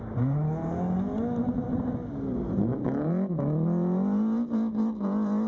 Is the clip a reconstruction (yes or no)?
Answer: no